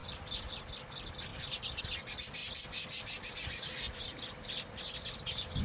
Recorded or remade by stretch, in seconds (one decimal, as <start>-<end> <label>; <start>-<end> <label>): 0.0-5.6 remade